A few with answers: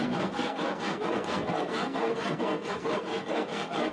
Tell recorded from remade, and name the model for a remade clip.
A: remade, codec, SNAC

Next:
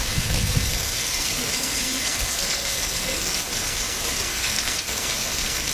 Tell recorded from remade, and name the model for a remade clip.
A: remade, codec, SNAC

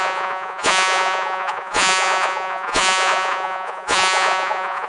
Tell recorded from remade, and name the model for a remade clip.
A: remade, vocoder, Vocos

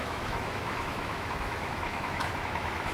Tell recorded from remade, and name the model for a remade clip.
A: remade, autoencoder, DAC-VAE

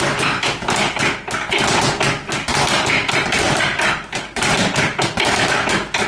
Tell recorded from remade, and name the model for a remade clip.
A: recorded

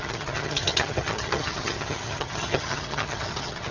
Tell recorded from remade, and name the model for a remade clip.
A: remade, vocoder, HiFi-GAN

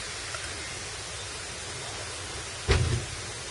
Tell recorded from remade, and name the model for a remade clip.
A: recorded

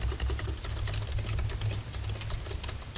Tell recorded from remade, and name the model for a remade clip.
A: recorded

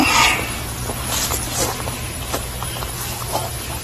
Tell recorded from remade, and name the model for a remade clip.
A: recorded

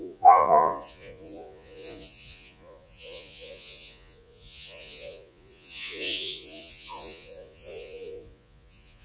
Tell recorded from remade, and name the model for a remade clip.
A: remade, vocoder, Vocos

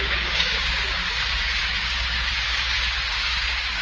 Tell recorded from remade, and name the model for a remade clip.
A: remade, codec, DAC